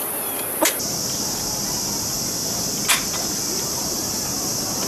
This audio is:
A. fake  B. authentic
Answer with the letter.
B